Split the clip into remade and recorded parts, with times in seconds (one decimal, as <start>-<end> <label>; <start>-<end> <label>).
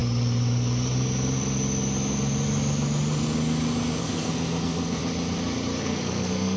0.0-4.0 recorded; 4.0-5.0 remade; 5.0-5.8 recorded; 5.8-6.6 remade